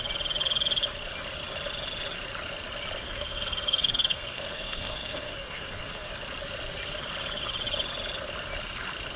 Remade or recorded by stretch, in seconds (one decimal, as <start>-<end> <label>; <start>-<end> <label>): 0.0-3.0 recorded; 3.0-6.1 remade; 6.1-9.2 recorded